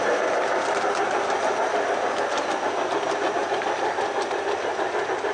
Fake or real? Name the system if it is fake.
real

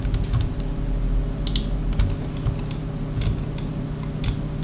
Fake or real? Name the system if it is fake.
real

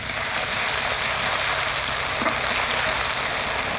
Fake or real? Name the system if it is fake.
real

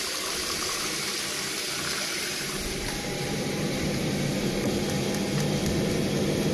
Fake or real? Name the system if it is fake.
real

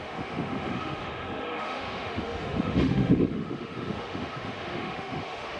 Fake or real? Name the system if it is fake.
fake, autoencoder, DAC-VAE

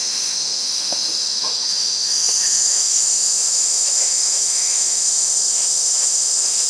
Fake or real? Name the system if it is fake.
fake, autoencoder, DAC-VAE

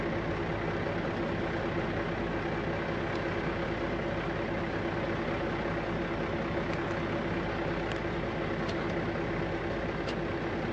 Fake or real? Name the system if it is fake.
real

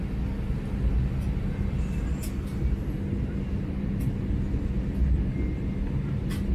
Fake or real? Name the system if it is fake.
real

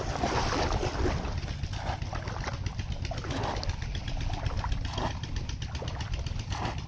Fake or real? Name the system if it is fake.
real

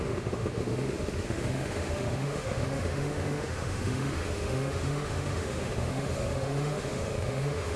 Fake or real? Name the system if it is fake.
fake, autoencoder, DAC-VAE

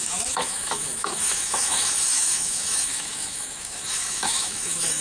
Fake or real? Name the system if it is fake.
fake, autoencoder, DAC-VAE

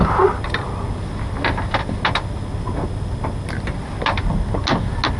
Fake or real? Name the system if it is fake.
real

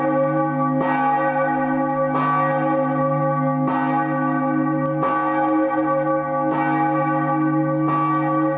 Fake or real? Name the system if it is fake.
real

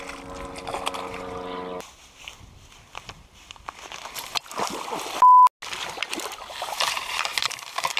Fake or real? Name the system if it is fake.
real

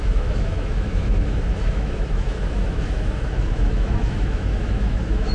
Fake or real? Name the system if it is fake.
fake, autoencoder, DAC-VAE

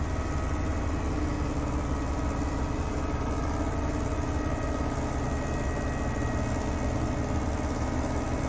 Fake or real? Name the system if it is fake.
real